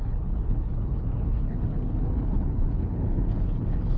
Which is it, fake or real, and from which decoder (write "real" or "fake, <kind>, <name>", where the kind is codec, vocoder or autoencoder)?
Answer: fake, codec, HILCodec